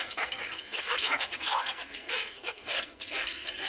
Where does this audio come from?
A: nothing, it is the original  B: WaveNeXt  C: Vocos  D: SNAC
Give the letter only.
D